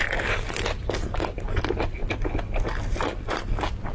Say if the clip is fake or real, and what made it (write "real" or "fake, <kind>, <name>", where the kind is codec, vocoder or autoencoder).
real